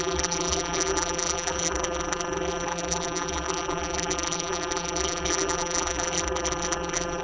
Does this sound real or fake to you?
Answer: fake